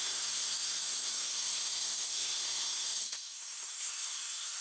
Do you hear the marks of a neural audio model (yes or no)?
yes